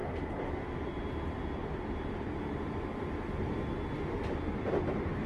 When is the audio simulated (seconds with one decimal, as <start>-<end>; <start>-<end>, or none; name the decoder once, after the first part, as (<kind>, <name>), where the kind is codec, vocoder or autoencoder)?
0.0-0.7 (vocoder, BigVGAN v2)